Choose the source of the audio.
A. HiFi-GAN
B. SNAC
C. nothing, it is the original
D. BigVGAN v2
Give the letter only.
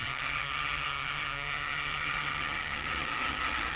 A